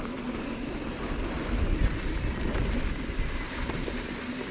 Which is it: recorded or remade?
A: recorded